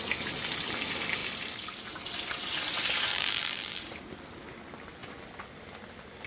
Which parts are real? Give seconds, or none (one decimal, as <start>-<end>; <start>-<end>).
0.0-3.1; 3.8-6.3